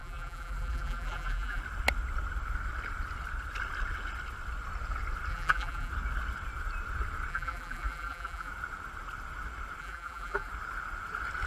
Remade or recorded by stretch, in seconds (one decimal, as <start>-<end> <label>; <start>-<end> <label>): 0.0-1.6 remade; 1.6-5.3 recorded; 5.3-5.9 remade; 5.9-7.3 recorded; 7.3-8.5 remade; 8.5-9.8 recorded; 9.8-10.5 remade; 10.5-11.5 recorded